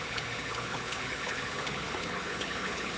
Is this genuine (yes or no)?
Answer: no